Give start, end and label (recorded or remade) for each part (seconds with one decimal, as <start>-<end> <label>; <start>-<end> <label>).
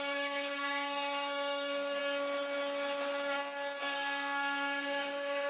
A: 0.0-2.0 remade; 2.0-3.8 recorded; 3.8-5.5 remade